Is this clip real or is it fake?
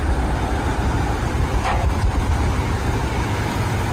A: fake